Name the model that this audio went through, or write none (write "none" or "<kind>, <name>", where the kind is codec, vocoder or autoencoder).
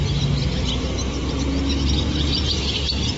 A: none